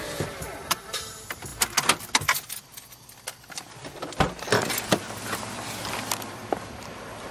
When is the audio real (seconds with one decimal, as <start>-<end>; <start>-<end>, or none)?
1.5-5.9